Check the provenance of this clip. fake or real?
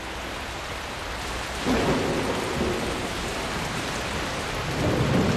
real